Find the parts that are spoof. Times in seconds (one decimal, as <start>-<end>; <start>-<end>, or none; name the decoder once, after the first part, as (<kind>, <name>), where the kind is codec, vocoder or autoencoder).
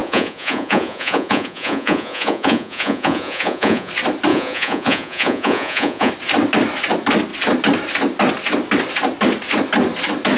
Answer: 0.0-3.9 (vocoder, Vocos); 4.3-6.1